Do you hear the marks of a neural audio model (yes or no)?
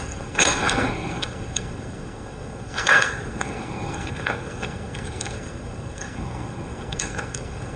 yes